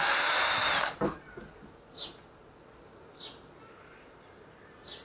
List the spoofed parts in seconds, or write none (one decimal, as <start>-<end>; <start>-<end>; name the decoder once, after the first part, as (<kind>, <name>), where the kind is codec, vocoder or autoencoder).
0.0-0.6 (vocoder, BigVGAN v2); 3.6-5.0